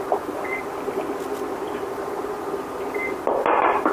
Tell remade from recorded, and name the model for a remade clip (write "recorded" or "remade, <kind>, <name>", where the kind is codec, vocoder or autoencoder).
recorded